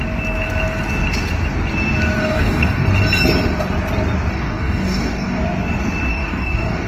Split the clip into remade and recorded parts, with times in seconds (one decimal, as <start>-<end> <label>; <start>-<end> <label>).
0.0-2.2 recorded; 2.2-2.9 remade; 2.9-4.3 recorded; 4.3-5.4 remade; 5.4-6.1 recorded; 6.1-6.9 remade